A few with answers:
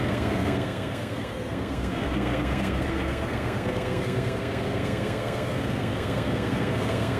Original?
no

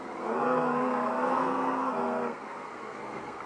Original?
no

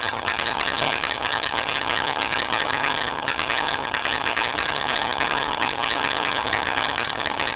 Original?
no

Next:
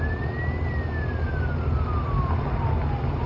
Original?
yes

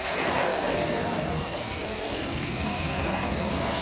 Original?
no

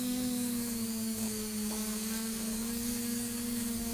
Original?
no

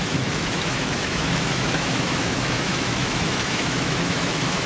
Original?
no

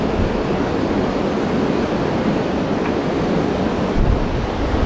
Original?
yes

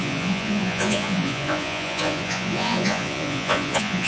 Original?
no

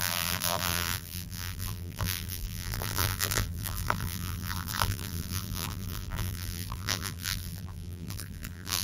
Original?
no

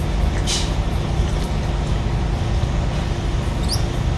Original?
yes